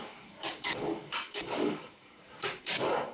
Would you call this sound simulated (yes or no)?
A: yes